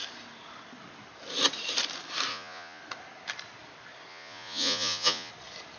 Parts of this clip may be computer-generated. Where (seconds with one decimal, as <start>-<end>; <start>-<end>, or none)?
2.3-2.8; 4.1-5.3